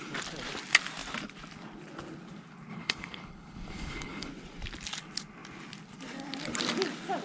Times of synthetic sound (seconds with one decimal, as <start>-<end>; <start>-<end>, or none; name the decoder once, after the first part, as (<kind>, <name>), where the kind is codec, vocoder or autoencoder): 2.7-4.3 (codec, HILCodec)